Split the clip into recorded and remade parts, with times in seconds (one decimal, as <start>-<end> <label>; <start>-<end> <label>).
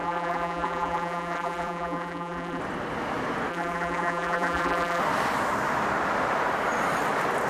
0.0-2.6 remade; 2.6-3.5 recorded; 3.5-5.0 remade; 5.0-7.5 recorded